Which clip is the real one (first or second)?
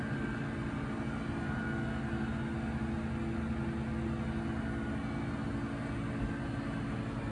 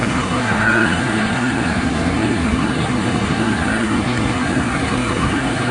first